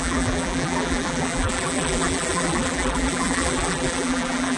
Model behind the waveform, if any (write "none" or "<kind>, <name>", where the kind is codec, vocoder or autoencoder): vocoder, BigVGAN v2